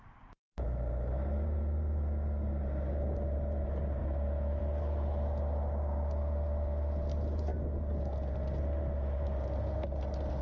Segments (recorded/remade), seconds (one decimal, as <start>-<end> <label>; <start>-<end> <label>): 0.0-4.0 recorded; 4.0-4.6 remade; 4.6-10.4 recorded